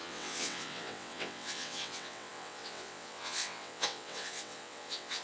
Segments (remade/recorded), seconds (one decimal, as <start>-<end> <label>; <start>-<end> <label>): 0.0-5.2 remade